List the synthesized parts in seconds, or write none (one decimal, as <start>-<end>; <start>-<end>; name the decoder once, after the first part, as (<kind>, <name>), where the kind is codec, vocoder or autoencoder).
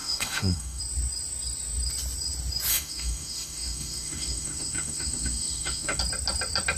0.0-0.8 (autoencoder, DAC-VAE); 2.7-6.0